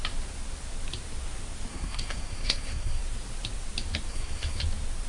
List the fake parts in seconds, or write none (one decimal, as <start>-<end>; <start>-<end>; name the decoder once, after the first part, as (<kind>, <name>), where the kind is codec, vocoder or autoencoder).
1.7-3.0 (codec, SNAC); 4.1-4.6

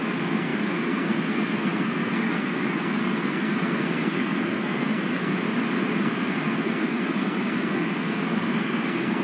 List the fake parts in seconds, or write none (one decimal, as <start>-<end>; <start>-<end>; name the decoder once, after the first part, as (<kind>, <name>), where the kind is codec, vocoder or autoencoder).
0.0-5.3 (codec, SNAC); 6.0-9.2

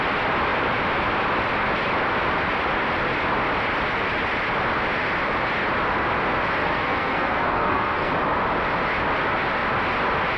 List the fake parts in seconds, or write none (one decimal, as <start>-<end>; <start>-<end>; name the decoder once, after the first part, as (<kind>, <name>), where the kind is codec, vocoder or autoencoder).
6.6-8.1 (codec, SNAC)

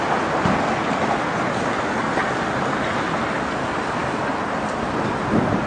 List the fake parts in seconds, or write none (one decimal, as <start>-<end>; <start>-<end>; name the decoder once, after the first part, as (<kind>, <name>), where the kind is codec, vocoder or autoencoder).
none

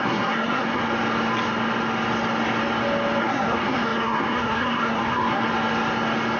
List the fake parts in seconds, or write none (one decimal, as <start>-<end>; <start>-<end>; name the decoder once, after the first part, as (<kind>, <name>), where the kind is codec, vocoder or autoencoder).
0.0-0.8 (codec, SNAC); 3.2-5.4

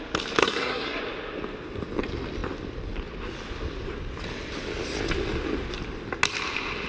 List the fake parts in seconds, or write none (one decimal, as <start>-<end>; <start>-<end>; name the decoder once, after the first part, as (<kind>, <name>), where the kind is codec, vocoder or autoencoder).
0.4-1.0 (codec, SNAC)

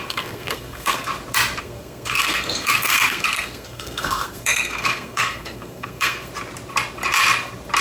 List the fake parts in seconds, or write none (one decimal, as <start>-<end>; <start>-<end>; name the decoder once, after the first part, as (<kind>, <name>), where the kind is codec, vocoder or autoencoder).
0.0-1.1 (codec, SNAC); 1.6-6.3